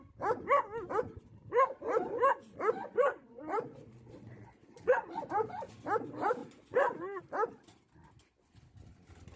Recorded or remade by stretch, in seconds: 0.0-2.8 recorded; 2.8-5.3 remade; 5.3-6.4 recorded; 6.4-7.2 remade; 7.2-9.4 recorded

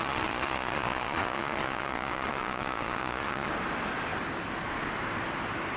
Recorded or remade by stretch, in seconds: 0.0-3.5 remade; 3.5-5.8 recorded

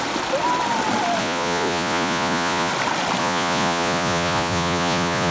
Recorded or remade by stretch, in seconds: 0.0-1.2 recorded; 1.2-2.7 remade; 2.7-3.2 recorded; 3.2-5.3 remade

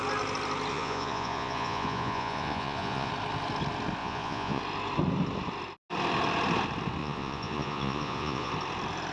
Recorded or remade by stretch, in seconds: 0.0-0.7 recorded; 0.7-3.1 remade; 3.1-4.0 recorded; 4.0-4.6 remade; 4.6-7.0 recorded; 7.0-8.5 remade; 8.5-9.1 recorded

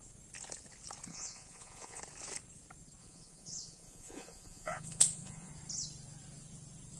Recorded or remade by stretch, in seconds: 0.0-1.1 recorded; 1.1-2.0 remade; 2.0-3.0 recorded; 3.0-5.5 remade; 5.5-7.0 recorded

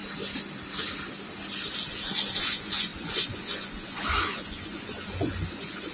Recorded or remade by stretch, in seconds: 0.0-2.4 recorded; 2.4-5.9 remade